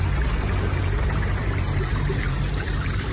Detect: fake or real fake